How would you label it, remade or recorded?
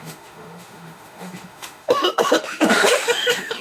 remade